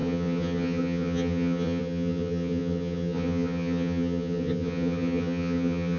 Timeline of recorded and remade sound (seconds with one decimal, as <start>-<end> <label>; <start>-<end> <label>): 0.0-6.0 remade